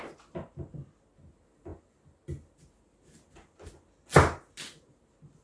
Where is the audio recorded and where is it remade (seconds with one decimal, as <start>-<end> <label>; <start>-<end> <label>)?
0.0-5.4 recorded

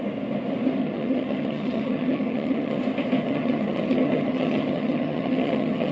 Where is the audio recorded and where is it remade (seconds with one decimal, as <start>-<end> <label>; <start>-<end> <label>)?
0.0-0.8 recorded; 0.8-2.8 remade; 2.8-3.2 recorded; 3.2-5.9 remade

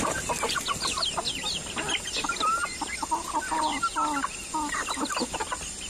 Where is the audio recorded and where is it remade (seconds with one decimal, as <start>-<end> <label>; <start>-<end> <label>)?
0.0-5.9 recorded

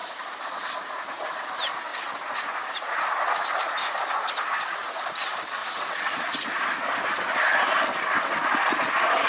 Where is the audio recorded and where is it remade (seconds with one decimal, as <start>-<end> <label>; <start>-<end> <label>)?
0.0-1.2 remade; 1.2-9.3 recorded

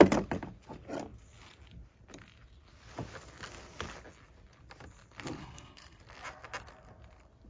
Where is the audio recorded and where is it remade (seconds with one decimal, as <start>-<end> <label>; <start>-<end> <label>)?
0.0-5.4 recorded; 5.4-6.0 remade; 6.0-7.5 recorded

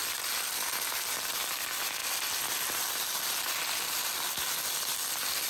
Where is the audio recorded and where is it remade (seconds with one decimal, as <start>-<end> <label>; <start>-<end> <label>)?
0.0-5.5 recorded

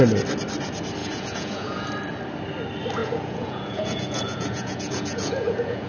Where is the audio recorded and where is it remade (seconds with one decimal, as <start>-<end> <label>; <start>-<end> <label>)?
0.0-1.0 recorded; 1.0-1.9 remade; 1.9-3.0 recorded; 3.0-5.9 remade

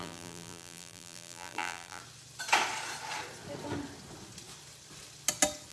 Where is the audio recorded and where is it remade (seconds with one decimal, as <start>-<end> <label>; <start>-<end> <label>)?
0.0-2.0 remade; 2.0-5.7 recorded